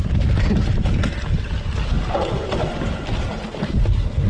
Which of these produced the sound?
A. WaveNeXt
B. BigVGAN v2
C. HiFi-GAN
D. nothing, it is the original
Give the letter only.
D